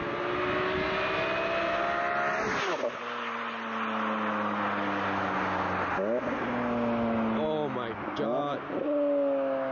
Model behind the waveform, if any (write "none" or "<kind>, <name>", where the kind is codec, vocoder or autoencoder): none